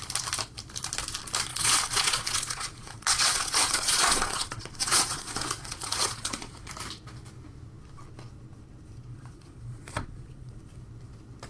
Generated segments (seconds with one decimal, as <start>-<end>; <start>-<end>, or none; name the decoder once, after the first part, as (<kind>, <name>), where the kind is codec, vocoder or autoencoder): 1.5-6.7 (vocoder, Vocos); 9.1-10.6